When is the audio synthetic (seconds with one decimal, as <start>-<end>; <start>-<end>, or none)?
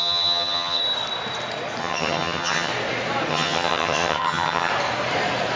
0.0-0.8; 1.8-2.7; 3.3-4.7